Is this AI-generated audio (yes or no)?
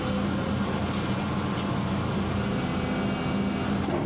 no